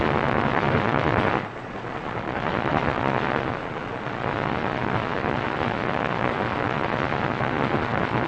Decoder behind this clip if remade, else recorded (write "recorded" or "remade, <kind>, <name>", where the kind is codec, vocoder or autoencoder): remade, vocoder, Vocos